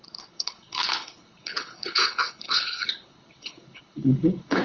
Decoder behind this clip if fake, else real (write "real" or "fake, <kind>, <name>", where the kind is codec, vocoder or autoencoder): fake, codec, HILCodec